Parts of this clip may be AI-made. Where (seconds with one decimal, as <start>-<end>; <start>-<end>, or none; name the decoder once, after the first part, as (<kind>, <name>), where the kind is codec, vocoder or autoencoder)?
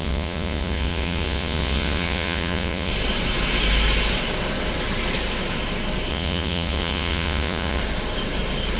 0.0-2.9 (vocoder, Vocos); 6.1-7.8